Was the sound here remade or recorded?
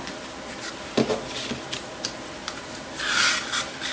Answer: recorded